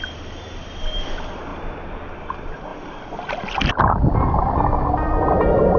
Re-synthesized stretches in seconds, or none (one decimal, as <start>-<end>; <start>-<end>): none